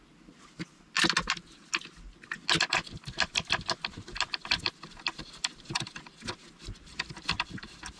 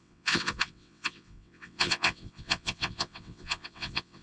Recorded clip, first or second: first